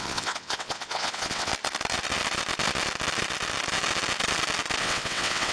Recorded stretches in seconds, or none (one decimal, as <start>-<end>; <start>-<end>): 1.5-4.8